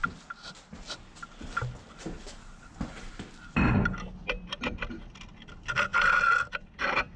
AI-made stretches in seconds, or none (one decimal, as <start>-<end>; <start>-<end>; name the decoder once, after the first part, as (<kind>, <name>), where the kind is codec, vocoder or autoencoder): none